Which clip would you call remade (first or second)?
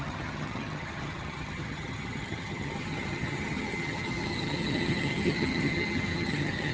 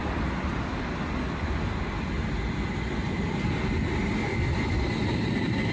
first